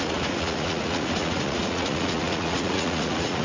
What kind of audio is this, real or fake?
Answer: fake